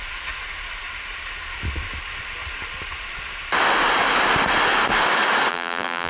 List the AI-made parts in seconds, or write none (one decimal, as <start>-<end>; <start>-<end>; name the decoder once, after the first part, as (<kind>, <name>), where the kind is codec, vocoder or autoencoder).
5.5-6.1 (vocoder, BigVGAN v2)